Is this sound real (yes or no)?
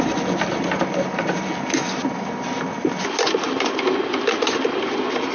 yes